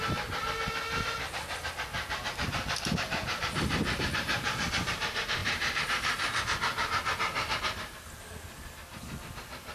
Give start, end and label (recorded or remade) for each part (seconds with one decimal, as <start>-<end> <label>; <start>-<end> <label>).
0.0-1.9 recorded; 1.9-4.9 remade; 4.9-5.4 recorded; 5.4-8.0 remade; 8.0-9.7 recorded

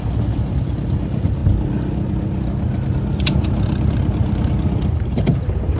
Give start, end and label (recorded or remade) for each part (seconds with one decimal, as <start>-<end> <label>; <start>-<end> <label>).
0.0-1.4 remade; 1.4-4.9 recorded; 4.9-5.8 remade

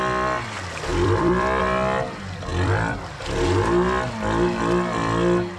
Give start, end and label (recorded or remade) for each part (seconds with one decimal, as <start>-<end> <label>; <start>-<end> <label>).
0.0-0.9 recorded; 0.9-1.6 remade; 1.6-2.5 recorded; 2.5-3.1 remade; 3.1-5.6 recorded

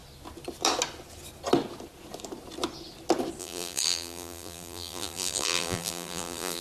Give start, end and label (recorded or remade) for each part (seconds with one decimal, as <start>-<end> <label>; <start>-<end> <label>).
0.0-3.4 recorded; 3.4-6.6 remade

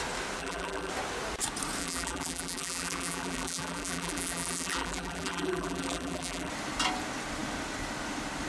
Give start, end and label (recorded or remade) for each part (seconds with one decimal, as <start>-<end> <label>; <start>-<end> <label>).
0.0-0.4 recorded; 0.4-0.9 remade; 0.9-1.8 recorded; 1.8-6.5 remade; 6.5-8.5 recorded

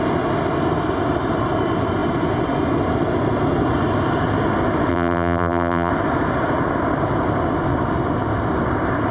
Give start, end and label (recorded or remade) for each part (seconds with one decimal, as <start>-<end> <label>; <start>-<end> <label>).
0.0-4.9 recorded; 4.9-5.9 remade; 5.9-9.1 recorded

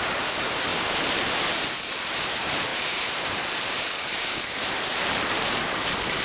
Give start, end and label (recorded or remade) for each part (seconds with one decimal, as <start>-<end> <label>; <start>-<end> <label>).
0.0-6.2 remade

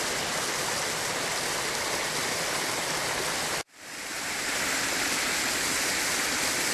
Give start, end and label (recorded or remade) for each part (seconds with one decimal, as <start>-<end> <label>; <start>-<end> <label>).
0.0-6.7 recorded